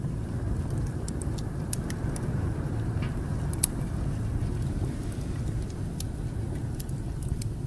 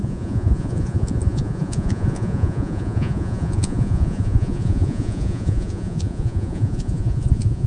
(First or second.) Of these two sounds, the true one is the first